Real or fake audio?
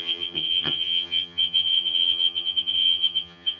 fake